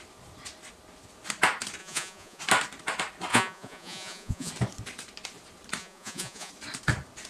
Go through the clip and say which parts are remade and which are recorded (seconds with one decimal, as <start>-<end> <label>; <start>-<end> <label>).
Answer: 0.0-1.8 recorded; 1.8-2.4 remade; 2.4-3.3 recorded; 3.3-4.5 remade; 4.5-5.8 recorded; 5.8-6.5 remade; 6.5-7.3 recorded